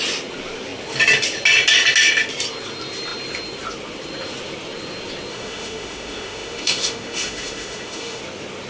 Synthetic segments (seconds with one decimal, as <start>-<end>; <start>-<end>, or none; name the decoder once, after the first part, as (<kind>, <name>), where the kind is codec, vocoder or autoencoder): 5.3-8.2 (autoencoder, DAC-VAE)